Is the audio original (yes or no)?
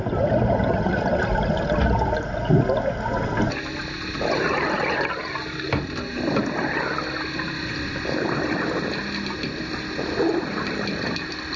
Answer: yes